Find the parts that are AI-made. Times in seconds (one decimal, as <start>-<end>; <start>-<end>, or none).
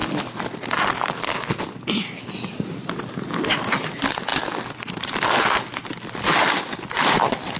none